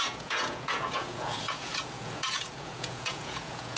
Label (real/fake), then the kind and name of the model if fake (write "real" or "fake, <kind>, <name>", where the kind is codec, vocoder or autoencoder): fake, vocoder, Vocos